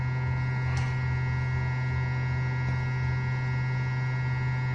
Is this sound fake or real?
real